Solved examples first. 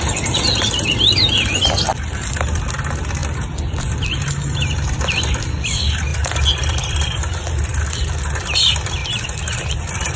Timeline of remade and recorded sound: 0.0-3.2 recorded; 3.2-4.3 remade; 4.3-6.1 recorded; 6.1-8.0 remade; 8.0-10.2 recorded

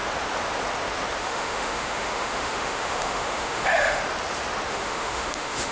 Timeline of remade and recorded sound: 0.0-1.2 recorded; 1.2-4.0 remade; 4.0-4.7 recorded; 4.7-5.7 remade

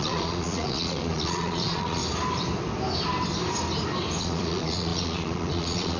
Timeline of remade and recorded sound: 0.0-2.0 remade; 2.0-4.2 recorded; 4.2-6.0 remade

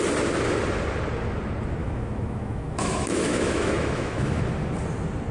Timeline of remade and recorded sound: 0.0-1.8 recorded; 1.8-4.4 remade; 4.4-5.3 recorded

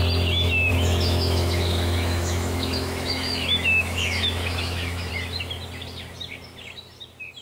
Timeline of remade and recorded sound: 0.0-0.7 recorded; 0.7-5.1 remade; 5.1-7.4 recorded

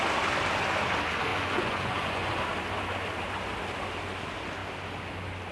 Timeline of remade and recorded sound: 0.0-1.3 recorded; 1.3-2.4 remade; 2.4-5.5 recorded

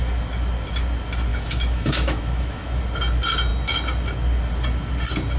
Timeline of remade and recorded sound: 0.0-1.3 recorded; 1.3-2.8 remade; 2.8-5.4 recorded

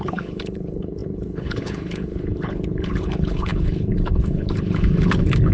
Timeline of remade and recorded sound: 0.0-5.5 remade